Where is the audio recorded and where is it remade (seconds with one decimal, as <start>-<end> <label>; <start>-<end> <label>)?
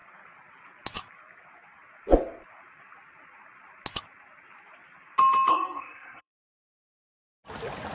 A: 0.0-5.5 recorded; 5.5-6.7 remade; 6.7-7.9 recorded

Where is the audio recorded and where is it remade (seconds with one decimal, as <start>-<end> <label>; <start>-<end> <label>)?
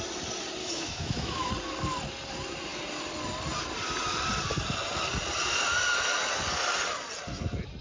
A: 0.0-0.6 recorded; 0.6-1.5 remade; 1.5-7.8 recorded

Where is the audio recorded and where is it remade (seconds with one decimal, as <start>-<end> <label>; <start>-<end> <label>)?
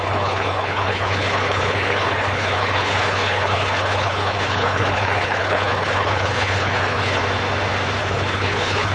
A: 0.0-7.2 remade; 7.2-8.0 recorded; 8.0-8.9 remade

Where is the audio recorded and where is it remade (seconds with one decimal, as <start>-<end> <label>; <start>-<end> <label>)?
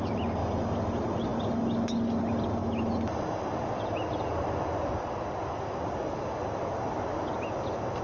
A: 0.0-8.0 recorded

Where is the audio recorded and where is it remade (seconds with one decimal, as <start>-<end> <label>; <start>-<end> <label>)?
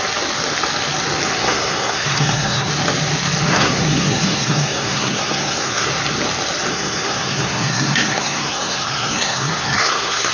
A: 0.0-1.4 recorded; 1.4-2.7 remade; 2.7-3.5 recorded; 3.5-5.9 remade; 5.9-6.7 recorded; 6.7-10.3 remade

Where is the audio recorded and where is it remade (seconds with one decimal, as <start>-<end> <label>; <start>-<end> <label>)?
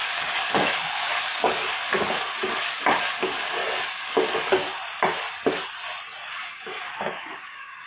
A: 0.0-4.6 remade; 4.6-6.3 recorded; 6.3-7.9 remade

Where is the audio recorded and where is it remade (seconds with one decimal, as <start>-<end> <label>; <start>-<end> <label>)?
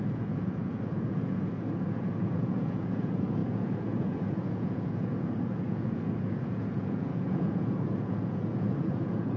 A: 0.0-9.4 remade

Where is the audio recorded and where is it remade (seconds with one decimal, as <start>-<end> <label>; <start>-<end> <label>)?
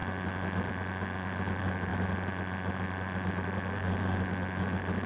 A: 0.0-5.1 recorded